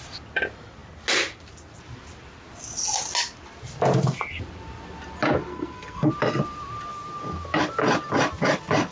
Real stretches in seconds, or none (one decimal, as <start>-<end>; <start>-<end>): 0.0-5.5; 6.1-8.9